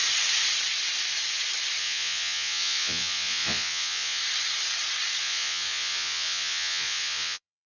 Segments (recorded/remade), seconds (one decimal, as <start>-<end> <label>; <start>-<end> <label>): 0.0-1.8 recorded; 1.8-4.2 remade; 4.2-5.2 recorded; 5.2-7.7 remade